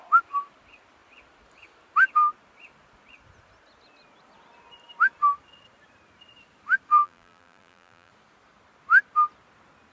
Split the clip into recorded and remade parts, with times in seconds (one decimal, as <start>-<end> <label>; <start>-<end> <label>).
0.0-6.9 recorded; 6.9-8.1 remade; 8.1-9.9 recorded